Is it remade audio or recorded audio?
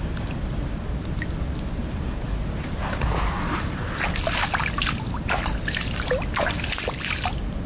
recorded